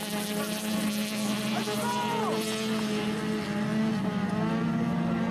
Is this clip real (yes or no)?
yes